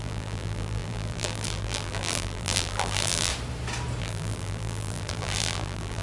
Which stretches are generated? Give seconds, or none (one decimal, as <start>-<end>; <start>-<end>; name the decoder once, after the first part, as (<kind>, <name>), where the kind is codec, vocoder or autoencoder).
0.0-3.3 (vocoder, BigVGAN v2); 4.0-6.0

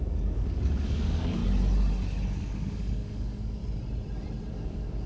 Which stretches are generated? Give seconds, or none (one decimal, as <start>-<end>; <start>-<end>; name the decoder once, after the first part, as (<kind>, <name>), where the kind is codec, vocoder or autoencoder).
0.0-1.4 (codec, DAC); 2.4-3.6; 4.5-5.1

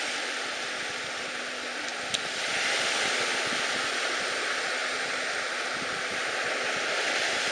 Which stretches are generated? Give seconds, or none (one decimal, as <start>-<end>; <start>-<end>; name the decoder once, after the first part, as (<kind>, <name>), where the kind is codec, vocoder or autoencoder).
none

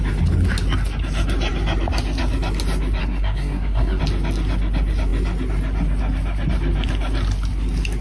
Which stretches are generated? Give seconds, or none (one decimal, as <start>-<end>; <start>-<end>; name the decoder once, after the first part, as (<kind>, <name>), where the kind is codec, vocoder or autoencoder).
3.0-4.0 (codec, SNAC)

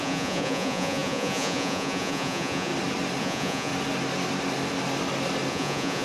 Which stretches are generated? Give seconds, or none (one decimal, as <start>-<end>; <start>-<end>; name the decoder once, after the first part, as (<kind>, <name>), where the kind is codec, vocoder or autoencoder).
0.0-2.7 (vocoder, Vocos); 3.2-3.7; 5.5-6.0

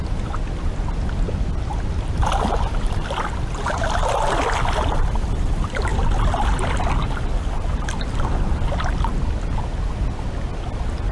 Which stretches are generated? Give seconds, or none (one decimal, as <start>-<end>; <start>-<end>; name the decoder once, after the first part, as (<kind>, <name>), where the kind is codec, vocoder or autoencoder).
none